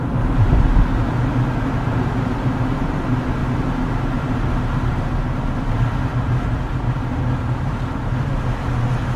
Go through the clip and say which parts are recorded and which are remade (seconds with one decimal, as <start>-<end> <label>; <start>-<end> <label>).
0.0-3.4 remade; 3.4-4.0 recorded; 4.0-9.2 remade